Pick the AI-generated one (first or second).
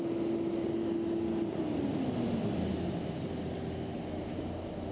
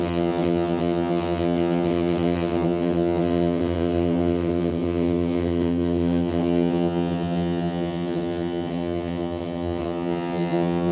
second